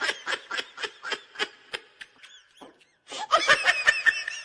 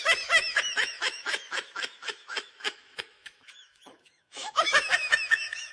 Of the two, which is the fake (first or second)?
second